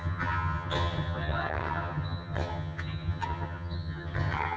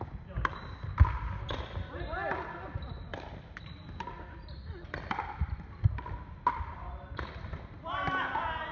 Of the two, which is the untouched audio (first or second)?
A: second